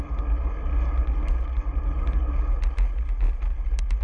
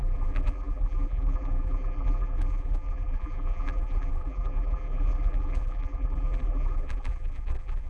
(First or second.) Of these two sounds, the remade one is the second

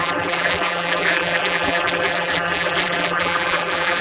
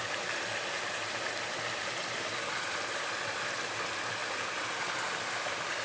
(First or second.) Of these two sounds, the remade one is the first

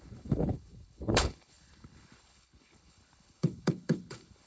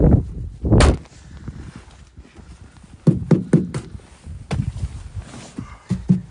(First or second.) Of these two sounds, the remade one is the first